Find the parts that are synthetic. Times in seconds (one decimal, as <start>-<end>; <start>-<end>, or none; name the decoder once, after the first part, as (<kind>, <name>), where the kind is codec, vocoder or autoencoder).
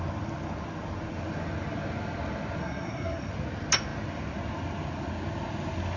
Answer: 2.6-3.3 (codec, SNAC)